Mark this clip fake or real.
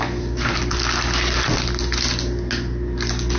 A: real